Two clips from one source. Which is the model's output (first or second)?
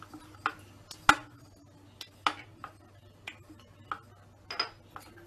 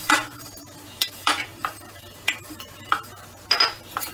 second